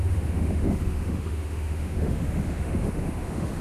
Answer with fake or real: fake